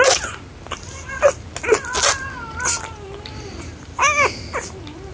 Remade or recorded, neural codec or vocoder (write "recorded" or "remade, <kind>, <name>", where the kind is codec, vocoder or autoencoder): recorded